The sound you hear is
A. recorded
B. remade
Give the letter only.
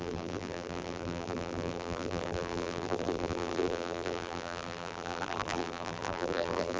B